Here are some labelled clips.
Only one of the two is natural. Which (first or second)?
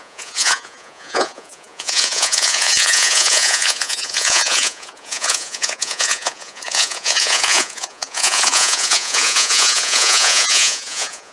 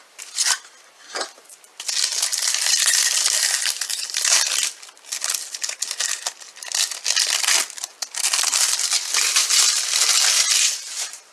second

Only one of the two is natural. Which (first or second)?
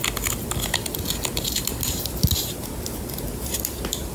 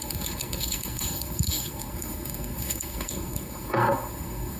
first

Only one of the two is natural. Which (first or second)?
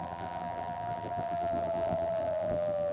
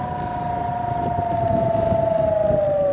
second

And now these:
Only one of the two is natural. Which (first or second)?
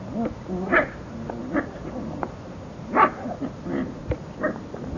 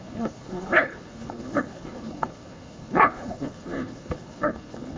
first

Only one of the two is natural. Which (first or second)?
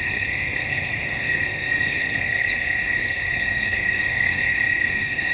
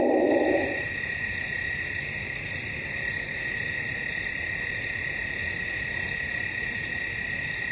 second